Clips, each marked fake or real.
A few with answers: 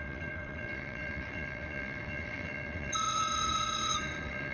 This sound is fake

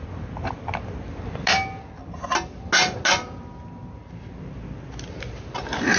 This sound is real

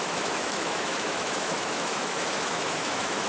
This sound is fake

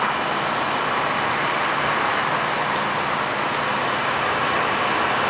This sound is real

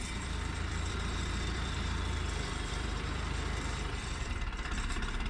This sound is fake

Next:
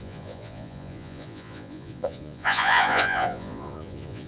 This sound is fake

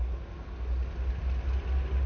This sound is real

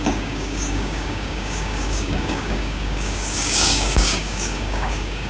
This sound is fake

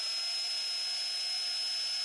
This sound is real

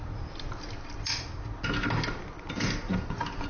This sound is real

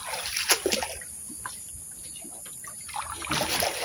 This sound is real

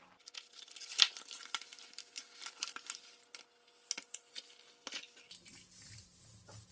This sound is real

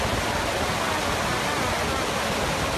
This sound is real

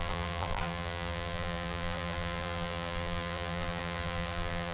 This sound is fake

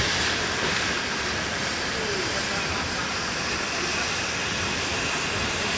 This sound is real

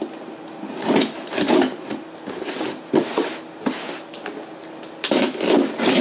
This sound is real